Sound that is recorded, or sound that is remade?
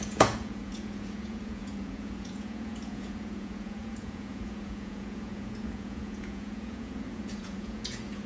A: remade